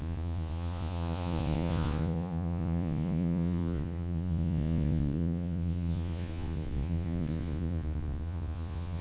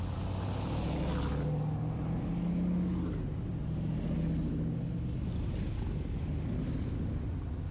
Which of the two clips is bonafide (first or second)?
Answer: second